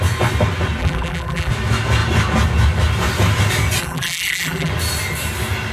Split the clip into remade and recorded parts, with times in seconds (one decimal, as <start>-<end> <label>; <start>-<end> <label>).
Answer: 0.0-0.8 recorded; 0.8-1.5 remade; 1.5-3.8 recorded; 3.8-4.7 remade; 4.7-5.7 recorded